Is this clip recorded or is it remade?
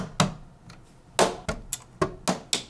recorded